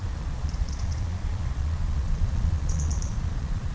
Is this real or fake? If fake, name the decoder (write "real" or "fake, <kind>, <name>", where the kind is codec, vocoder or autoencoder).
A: fake, vocoder, Vocos